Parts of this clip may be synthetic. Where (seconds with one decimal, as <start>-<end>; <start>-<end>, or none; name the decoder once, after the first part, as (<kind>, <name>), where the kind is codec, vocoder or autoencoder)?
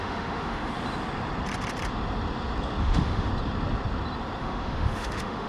0.0-0.7 (autoencoder, DAC-VAE); 2.8-3.3; 4.4-5.5